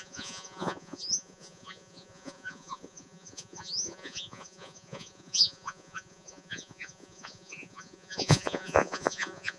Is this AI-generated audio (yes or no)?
yes